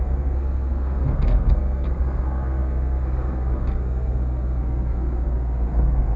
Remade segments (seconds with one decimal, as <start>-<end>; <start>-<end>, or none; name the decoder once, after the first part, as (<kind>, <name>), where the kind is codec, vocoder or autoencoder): 0.0-6.2 (codec, SNAC)